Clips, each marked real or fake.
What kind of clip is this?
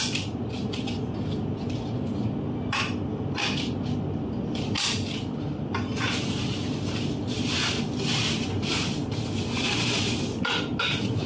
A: real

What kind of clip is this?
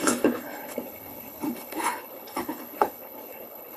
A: fake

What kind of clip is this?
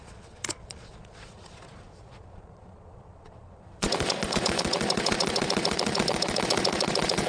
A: fake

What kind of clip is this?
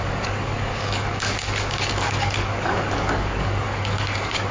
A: fake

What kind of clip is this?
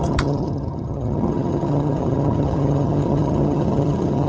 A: fake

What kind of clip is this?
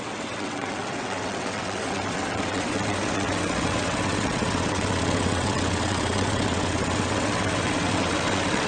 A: fake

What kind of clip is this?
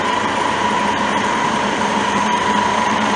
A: fake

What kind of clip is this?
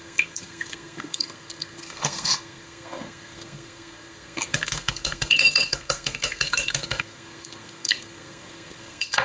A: fake